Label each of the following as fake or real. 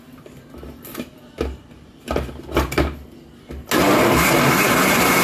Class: real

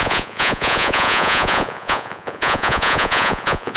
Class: fake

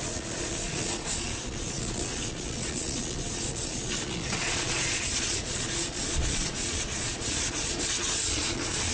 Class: fake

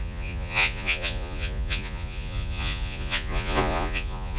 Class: fake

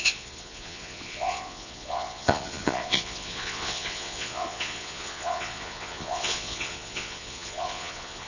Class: fake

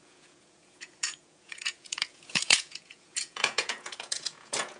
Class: fake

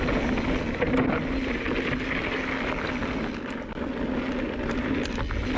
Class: real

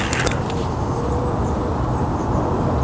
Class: real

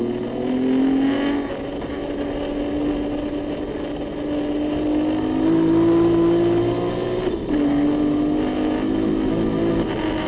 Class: real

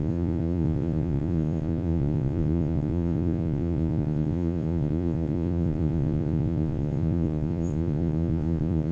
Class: fake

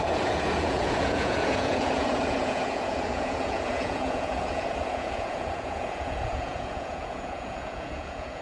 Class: fake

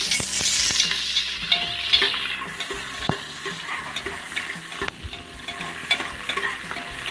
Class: real